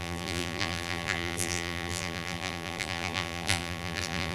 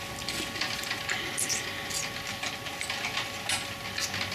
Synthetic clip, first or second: first